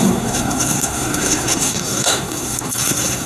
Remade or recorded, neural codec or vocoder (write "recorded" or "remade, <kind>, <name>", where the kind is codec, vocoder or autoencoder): remade, codec, SNAC